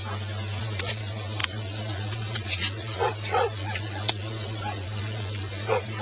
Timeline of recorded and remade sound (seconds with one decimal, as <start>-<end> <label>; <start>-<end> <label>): 0.0-0.6 recorded; 0.6-6.0 remade